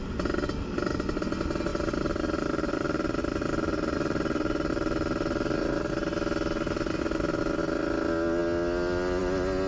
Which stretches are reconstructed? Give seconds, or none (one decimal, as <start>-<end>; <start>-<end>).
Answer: 1.7-5.9